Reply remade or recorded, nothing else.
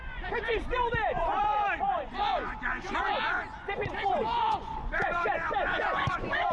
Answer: remade